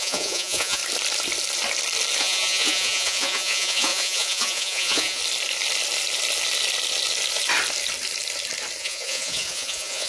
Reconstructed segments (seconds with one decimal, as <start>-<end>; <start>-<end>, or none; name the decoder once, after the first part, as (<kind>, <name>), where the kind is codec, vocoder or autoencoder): 0.0-0.8 (vocoder, Vocos); 2.2-5.2; 8.8-10.1